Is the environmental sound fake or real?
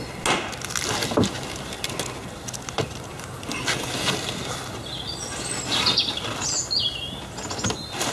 real